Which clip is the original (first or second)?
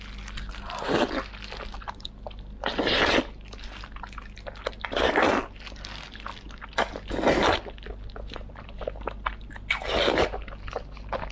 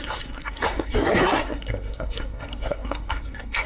first